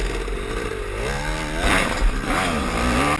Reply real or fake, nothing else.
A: real